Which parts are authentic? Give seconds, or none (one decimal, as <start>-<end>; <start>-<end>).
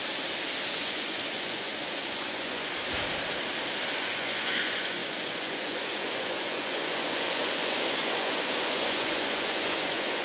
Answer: 0.0-0.7; 2.7-4.0